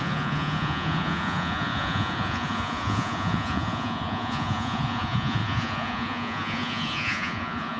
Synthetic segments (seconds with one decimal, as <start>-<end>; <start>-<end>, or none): 0.0-7.8